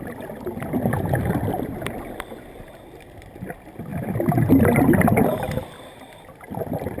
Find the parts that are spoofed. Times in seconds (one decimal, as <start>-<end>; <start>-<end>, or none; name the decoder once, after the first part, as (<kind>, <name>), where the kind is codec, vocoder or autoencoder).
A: none